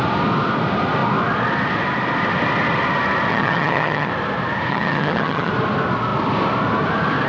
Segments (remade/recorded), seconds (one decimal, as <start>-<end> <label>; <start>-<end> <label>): 0.0-3.3 recorded; 3.3-4.1 remade; 4.1-4.7 recorded; 4.7-5.5 remade; 5.5-7.3 recorded